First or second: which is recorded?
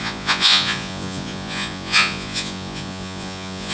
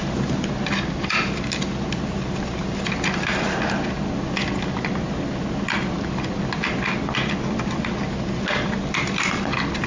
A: second